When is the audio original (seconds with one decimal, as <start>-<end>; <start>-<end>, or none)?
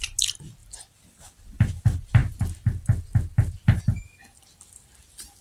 0.0-0.6; 1.8-5.4